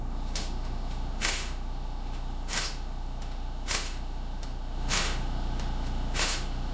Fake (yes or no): yes